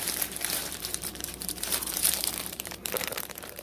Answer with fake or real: fake